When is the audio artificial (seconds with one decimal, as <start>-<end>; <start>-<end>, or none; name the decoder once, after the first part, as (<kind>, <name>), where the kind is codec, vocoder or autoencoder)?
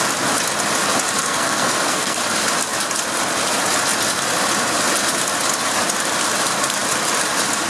1.2-2.2 (codec, SNAC)